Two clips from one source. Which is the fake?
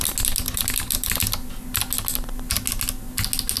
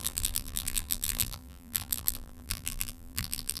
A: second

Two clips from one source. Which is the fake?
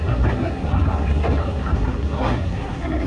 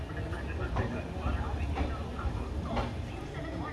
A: first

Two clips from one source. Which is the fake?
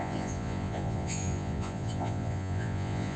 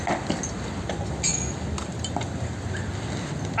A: first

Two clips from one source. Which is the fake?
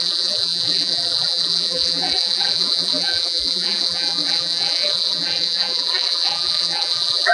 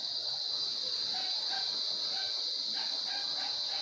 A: first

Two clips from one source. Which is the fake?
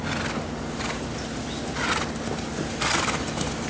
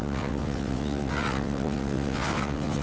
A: second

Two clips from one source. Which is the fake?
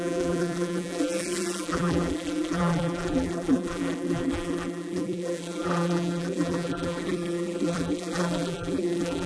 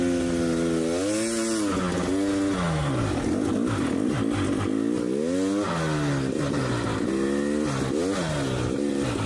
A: first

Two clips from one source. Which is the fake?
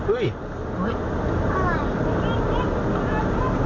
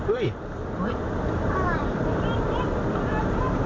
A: second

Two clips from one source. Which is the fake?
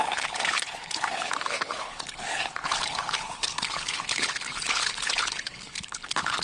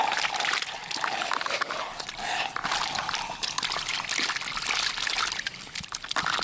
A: first